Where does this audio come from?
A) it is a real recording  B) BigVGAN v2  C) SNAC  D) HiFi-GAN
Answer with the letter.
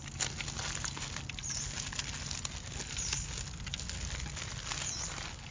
A